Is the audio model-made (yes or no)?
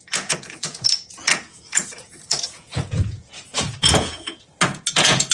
yes